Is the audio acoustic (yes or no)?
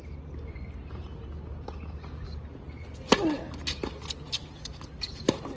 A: yes